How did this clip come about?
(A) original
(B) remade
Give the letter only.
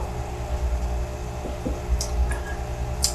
A